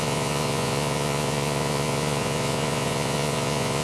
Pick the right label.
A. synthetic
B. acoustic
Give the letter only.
A